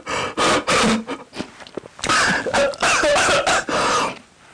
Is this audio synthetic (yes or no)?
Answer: no